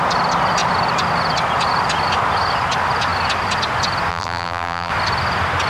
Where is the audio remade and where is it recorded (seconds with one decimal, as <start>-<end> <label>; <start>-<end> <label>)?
0.0-4.1 recorded; 4.1-4.9 remade; 4.9-5.7 recorded